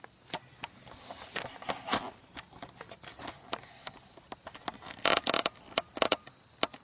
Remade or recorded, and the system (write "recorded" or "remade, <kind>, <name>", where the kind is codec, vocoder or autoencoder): recorded